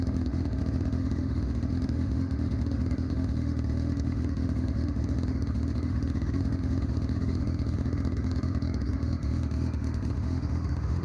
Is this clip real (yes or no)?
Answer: no